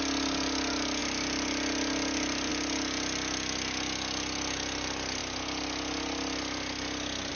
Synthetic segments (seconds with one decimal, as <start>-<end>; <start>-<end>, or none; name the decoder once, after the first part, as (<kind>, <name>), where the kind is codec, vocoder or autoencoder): none